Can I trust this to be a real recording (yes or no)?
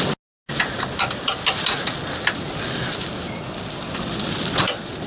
yes